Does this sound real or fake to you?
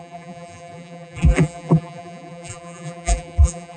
fake